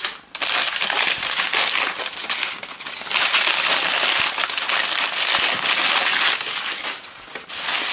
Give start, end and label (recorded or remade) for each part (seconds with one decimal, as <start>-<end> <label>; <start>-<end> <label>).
0.0-7.9 recorded